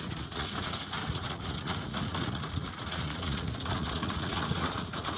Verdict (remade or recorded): remade